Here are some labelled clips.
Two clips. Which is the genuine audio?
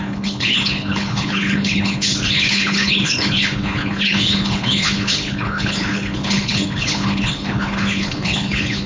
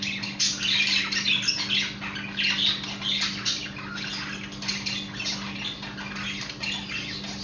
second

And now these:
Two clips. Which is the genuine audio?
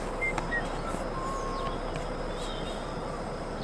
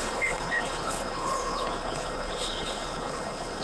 first